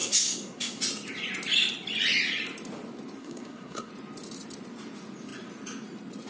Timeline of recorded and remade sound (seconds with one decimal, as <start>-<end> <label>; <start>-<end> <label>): 0.0-0.8 remade; 0.8-3.2 recorded; 3.2-3.9 remade; 3.9-6.3 recorded